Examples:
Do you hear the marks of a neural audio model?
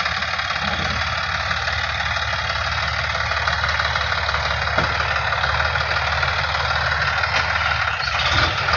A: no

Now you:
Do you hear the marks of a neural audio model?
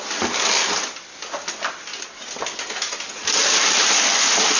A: no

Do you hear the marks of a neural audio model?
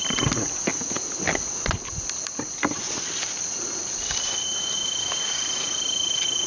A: no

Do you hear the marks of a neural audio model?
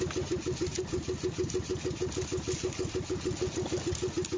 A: no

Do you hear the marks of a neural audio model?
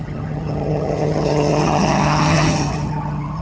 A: yes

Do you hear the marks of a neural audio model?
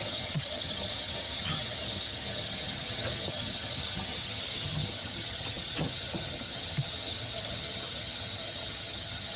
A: yes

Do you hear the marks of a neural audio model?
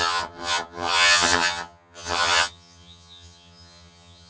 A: yes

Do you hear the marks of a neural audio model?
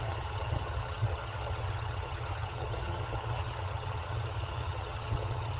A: yes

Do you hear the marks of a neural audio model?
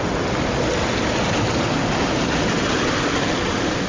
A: no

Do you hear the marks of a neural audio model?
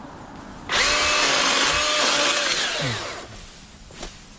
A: no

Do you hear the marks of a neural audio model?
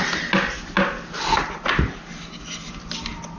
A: no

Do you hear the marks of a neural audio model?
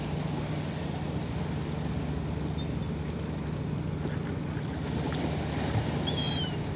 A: no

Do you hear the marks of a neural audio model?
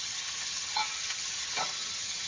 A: yes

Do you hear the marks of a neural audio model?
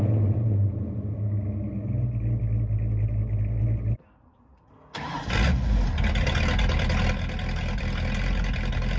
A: no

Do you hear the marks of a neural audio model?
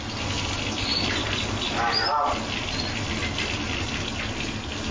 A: no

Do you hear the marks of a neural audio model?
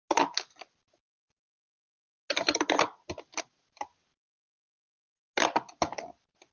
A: no